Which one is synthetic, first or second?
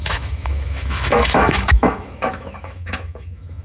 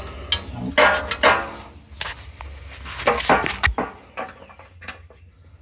first